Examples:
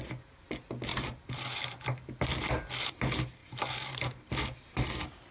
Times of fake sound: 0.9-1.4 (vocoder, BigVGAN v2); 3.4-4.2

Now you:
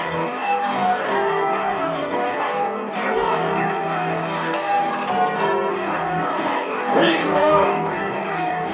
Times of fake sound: 0.0-4.9 (codec, DAC); 5.7-8.7